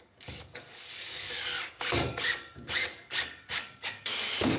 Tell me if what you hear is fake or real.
fake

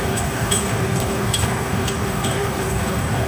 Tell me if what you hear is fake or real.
fake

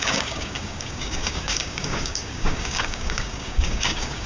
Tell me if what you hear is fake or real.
fake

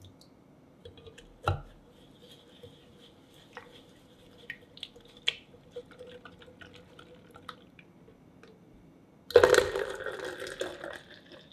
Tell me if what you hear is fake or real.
real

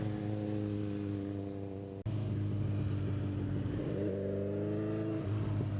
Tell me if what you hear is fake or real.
real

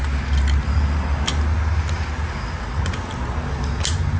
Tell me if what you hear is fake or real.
real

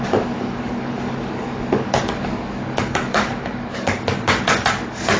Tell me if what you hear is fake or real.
fake